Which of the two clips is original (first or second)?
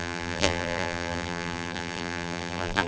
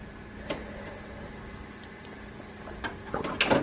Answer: second